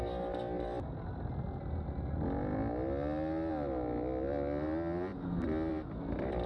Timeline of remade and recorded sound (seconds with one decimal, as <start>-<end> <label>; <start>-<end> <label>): 0.0-6.5 recorded